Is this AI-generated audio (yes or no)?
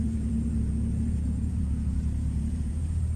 yes